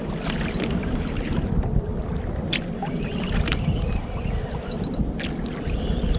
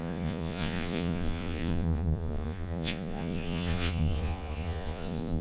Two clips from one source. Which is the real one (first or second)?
first